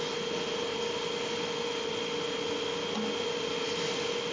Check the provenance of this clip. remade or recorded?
recorded